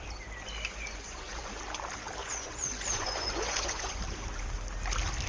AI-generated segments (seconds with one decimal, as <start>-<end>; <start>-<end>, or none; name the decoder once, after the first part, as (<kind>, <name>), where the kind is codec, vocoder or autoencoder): 0.7-1.5 (vocoder, Vocos); 2.2-4.0